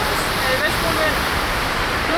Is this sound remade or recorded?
remade